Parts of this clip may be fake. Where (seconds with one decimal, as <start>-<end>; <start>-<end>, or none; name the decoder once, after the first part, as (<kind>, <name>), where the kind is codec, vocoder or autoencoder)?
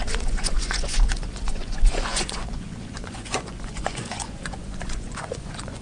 0.0-5.8 (vocoder, Vocos)